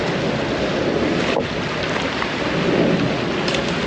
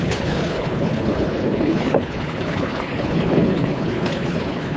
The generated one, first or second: second